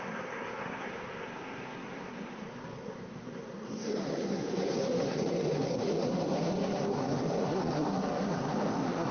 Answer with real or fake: fake